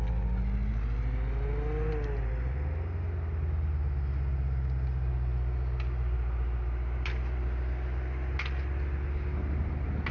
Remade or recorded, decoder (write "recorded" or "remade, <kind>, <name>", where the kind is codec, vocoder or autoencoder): recorded